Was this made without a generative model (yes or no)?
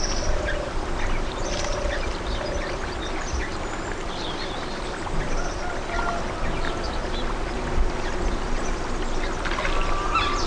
yes